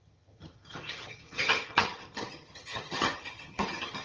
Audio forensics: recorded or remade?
remade